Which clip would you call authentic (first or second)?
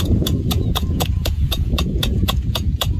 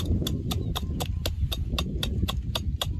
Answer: second